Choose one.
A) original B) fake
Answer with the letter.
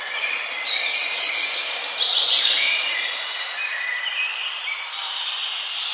B